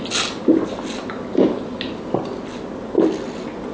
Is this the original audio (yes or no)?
yes